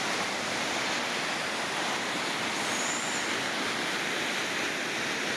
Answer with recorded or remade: recorded